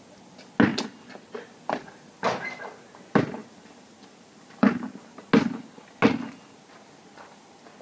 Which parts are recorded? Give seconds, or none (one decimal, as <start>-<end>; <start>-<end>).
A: 0.0-3.4; 5.3-7.8